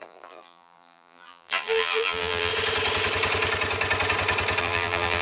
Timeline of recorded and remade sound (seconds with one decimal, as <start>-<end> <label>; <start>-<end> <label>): 0.0-2.5 remade; 2.5-4.6 recorded; 4.6-5.2 remade